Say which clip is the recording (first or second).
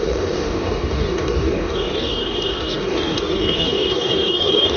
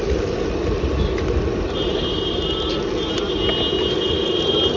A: second